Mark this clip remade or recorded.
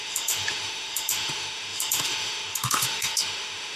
remade